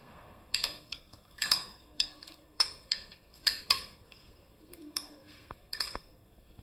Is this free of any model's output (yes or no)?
no